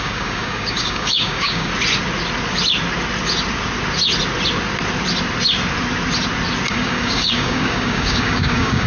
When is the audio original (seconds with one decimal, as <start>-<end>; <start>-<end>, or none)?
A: 1.7-6.7